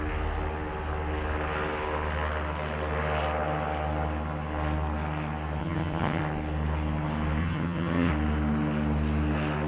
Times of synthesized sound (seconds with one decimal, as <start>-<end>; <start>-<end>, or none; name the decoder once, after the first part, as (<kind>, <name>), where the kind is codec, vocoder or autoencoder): 5.6-6.2 (vocoder, HiFi-GAN); 7.4-8.1